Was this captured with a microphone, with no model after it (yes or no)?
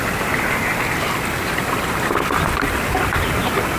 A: yes